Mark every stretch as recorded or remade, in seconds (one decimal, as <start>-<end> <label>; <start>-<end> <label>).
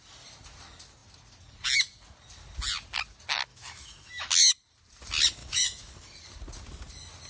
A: 0.0-3.5 recorded; 3.5-4.3 remade; 4.3-5.4 recorded; 5.4-6.2 remade; 6.2-7.3 recorded